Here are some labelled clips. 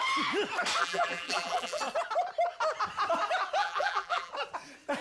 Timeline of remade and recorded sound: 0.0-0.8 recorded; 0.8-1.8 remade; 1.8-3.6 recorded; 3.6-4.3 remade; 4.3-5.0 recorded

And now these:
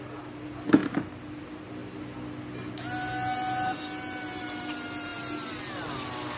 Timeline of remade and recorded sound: 0.0-6.4 recorded

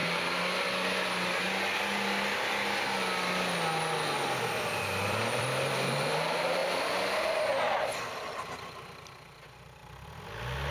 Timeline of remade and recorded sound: 0.0-4.4 recorded; 4.4-6.6 remade; 6.6-8.0 recorded; 8.0-9.8 remade; 9.8-10.7 recorded

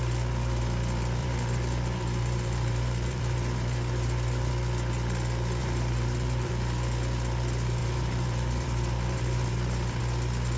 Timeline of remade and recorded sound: 0.0-1.2 recorded; 1.2-4.5 remade; 4.5-5.6 recorded; 5.6-6.5 remade; 6.5-7.8 recorded; 7.8-10.0 remade; 10.0-10.6 recorded

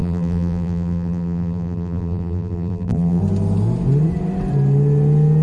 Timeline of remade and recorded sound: 0.0-3.2 remade; 3.2-5.4 recorded

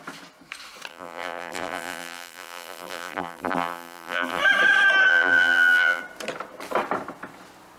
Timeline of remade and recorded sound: 0.0-0.9 recorded; 0.9-4.4 remade; 4.4-5.1 recorded; 5.1-6.0 remade; 6.0-7.8 recorded